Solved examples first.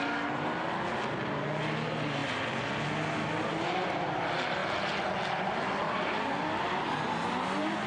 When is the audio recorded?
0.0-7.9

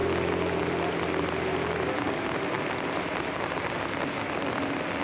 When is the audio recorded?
0.0-5.0

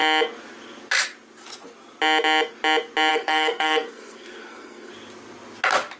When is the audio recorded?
0.0-3.1; 4.9-6.0

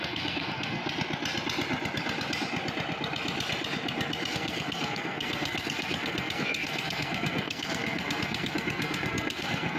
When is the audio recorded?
0.8-4.3

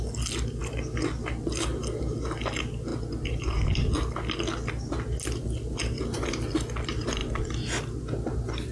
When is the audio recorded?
0.0-8.7